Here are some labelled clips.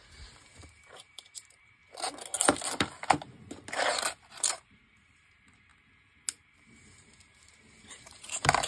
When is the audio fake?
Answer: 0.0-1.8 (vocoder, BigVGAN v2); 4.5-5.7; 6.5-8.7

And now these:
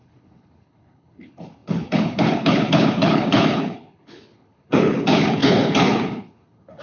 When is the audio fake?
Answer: 0.0-6.8 (codec, HILCodec)

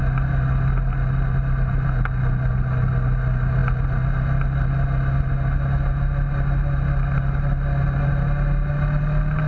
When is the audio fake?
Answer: none

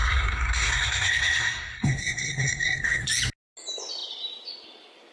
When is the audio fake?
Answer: 0.0-3.1 (codec, SNAC)

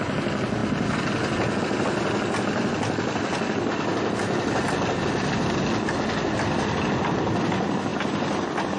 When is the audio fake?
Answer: none

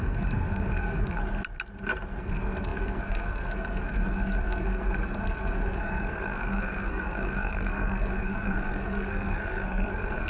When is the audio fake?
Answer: 0.0-1.2 (codec, SNAC); 2.2-10.3

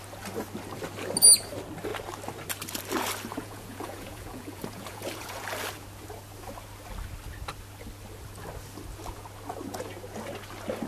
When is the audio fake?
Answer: 3.3-5.4 (vocoder, Vocos)